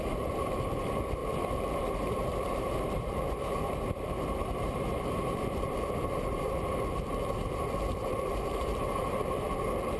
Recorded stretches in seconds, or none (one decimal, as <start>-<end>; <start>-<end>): 1.2-1.8